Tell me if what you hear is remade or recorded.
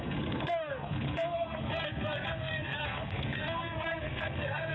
remade